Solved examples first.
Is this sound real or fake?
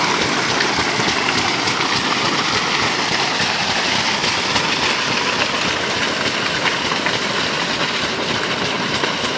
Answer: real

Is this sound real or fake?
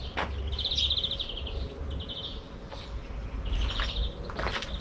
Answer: real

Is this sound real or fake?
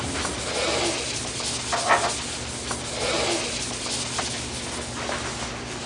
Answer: real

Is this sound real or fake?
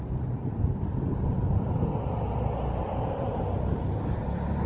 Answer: real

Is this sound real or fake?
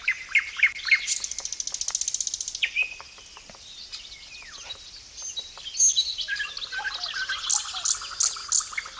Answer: real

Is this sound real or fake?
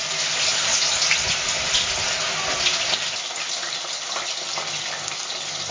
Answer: real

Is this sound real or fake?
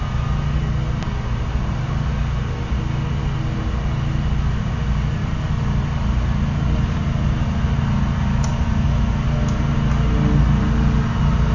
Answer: real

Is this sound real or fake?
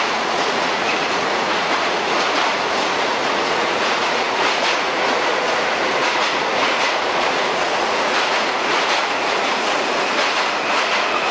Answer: fake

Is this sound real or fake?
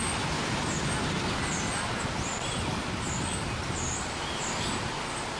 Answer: real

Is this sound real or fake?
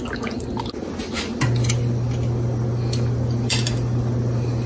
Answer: real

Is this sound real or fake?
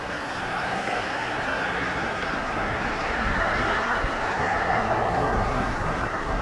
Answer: fake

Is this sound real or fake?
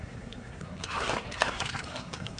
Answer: fake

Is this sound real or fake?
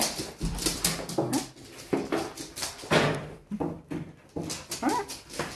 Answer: fake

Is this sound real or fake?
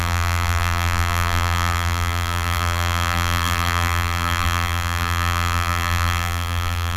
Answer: fake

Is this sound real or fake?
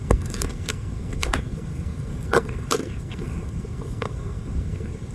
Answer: fake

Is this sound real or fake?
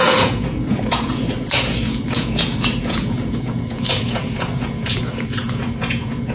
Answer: fake